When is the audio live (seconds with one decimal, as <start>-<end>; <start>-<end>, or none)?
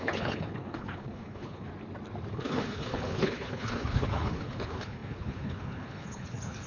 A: 1.7-2.3